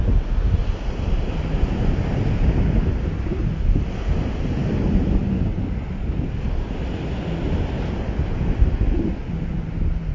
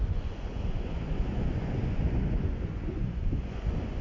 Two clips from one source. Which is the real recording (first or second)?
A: first